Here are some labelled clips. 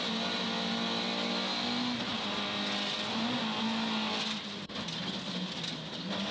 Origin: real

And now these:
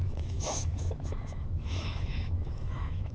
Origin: fake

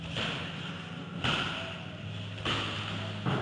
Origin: real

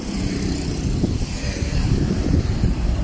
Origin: fake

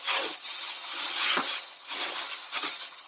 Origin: fake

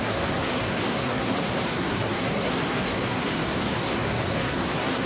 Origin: fake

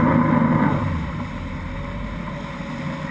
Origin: real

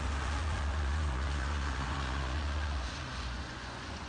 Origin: fake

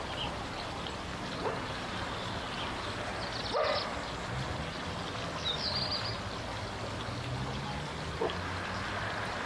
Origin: real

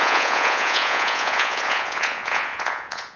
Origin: fake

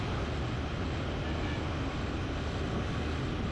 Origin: real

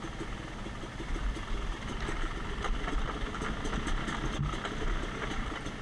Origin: real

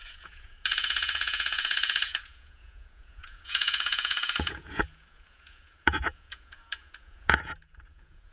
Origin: fake